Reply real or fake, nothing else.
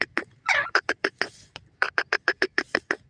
fake